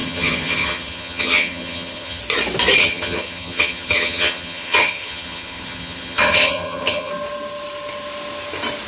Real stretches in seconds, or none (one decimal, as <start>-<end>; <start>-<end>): 2.2-2.8; 7.1-8.9